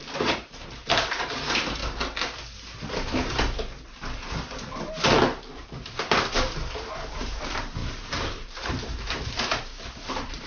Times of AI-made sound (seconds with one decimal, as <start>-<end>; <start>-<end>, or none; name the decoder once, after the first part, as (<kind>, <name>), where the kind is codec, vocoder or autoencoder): 0.0-1.8 (vocoder, BigVGAN v2); 3.3-10.5